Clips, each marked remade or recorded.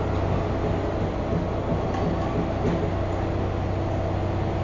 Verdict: recorded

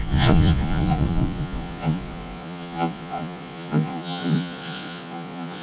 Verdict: remade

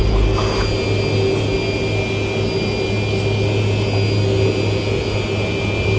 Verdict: recorded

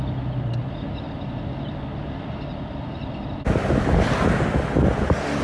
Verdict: recorded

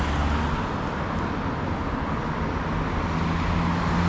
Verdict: recorded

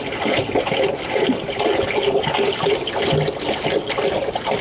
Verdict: recorded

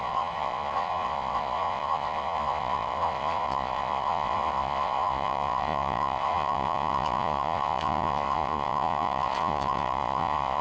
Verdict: remade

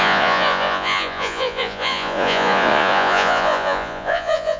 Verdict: remade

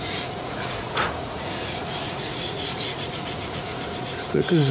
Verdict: remade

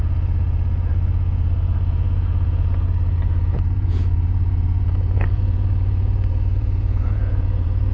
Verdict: remade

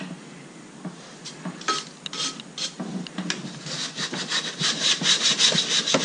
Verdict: recorded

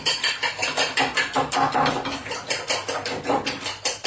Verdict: recorded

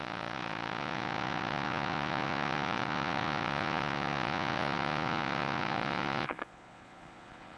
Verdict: remade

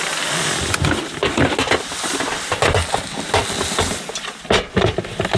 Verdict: recorded